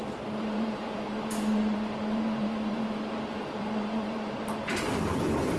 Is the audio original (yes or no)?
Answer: no